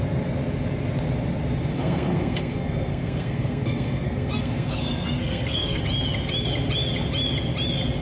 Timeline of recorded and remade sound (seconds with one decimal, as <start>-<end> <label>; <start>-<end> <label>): 0.0-1.7 recorded; 1.7-5.8 remade; 5.8-8.0 recorded